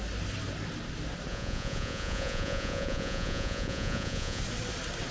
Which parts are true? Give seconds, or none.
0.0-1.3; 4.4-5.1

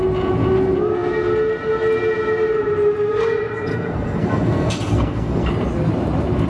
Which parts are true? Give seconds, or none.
0.0-3.7; 5.5-6.5

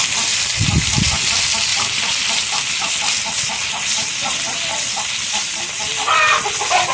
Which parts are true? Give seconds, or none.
0.0-1.7; 5.8-6.9

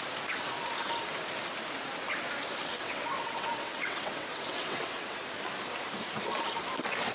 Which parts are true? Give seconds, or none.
0.0-2.7; 5.2-7.1